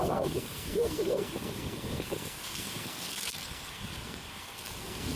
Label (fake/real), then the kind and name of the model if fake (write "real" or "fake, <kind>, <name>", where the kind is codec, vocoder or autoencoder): fake, codec, SNAC